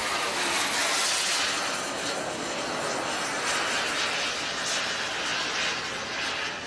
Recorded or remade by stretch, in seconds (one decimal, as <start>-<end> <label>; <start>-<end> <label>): 0.0-6.7 recorded